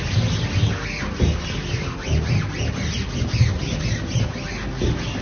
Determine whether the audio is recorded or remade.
recorded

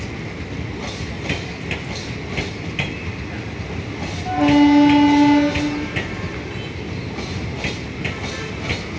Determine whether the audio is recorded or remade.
recorded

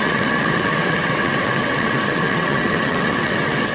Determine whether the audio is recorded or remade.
remade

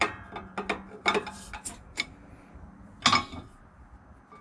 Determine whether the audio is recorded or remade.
recorded